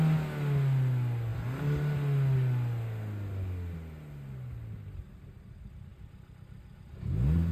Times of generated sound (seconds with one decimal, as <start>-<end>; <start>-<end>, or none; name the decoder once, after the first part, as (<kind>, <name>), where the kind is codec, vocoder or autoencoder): none